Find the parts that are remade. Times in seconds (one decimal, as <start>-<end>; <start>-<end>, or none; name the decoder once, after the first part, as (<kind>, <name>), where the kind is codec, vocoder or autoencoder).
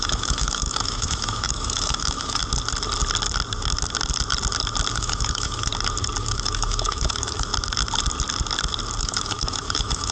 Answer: 0.0-2.4 (autoencoder, DAC-VAE); 4.9-5.7; 6.2-7.5; 9.0-10.1